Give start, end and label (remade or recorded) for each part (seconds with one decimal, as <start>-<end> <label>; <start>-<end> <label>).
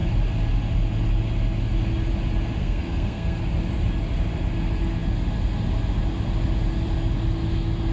0.0-2.6 recorded; 2.6-3.4 remade; 3.4-7.9 recorded